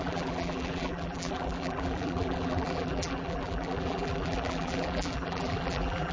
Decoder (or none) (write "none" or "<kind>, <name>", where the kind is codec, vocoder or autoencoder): vocoder, BigVGAN v2